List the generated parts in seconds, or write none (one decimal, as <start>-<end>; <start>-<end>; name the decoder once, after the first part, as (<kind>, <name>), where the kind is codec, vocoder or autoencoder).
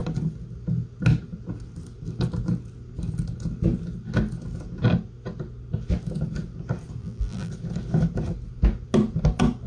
7.0-7.5 (vocoder, BigVGAN v2)